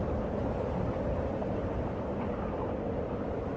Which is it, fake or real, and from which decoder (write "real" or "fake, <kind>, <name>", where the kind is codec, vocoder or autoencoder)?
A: real